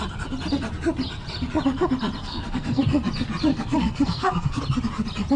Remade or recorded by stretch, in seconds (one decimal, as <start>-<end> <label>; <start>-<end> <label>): 0.0-2.2 recorded; 2.2-2.8 remade; 2.8-3.5 recorded; 3.5-4.6 remade; 4.6-5.4 recorded